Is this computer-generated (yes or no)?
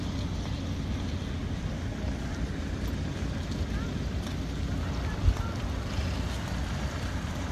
no